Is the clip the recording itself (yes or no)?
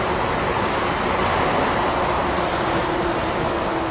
yes